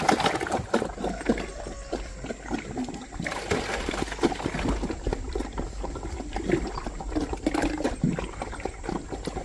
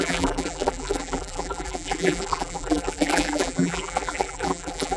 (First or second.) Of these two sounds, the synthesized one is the second